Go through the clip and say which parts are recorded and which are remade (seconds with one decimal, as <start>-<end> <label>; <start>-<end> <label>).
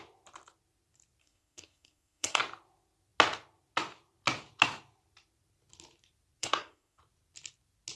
0.0-1.2 recorded; 1.2-2.4 remade; 2.4-6.4 recorded; 6.4-7.0 remade; 7.0-8.0 recorded